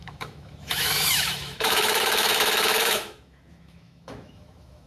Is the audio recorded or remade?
remade